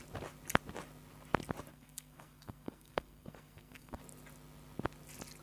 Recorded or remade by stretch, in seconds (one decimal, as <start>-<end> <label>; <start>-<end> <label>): 0.0-1.7 recorded; 1.7-4.0 remade; 4.0-5.4 recorded